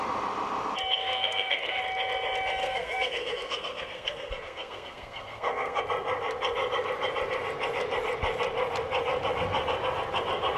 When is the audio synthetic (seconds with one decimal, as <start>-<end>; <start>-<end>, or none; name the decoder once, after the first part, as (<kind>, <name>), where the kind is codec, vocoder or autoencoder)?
1.0-1.8 (codec, SNAC); 2.6-5.8